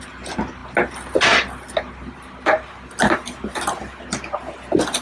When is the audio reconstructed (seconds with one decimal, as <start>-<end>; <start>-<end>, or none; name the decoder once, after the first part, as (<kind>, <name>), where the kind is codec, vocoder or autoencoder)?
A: none